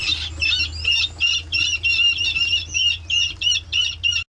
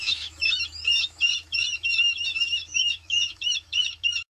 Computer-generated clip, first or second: second